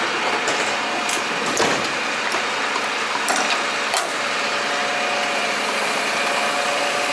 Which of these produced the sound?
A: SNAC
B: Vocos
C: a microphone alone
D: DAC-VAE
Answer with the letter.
C